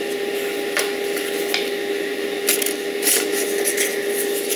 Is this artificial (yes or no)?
no